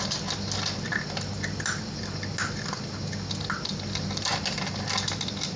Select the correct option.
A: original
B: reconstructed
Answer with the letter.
A